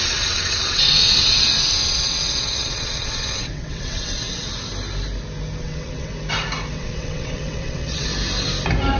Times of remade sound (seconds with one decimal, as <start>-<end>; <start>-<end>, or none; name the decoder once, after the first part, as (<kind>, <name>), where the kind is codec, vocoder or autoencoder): 0.0-4.5 (vocoder, WaveNeXt); 5.6-6.1; 6.7-8.1